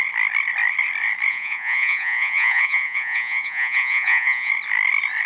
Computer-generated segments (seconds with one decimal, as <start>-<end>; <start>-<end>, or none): 1.3-4.5

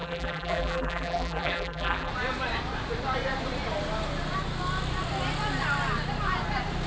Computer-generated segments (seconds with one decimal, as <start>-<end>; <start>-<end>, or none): 0.0-2.1

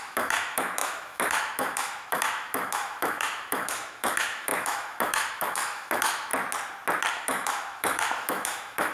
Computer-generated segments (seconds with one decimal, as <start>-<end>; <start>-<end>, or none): 0.0-6.3; 7.1-8.9

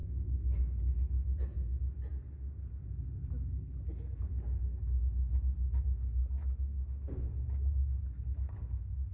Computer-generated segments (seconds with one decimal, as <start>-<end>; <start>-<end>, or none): 0.0-0.6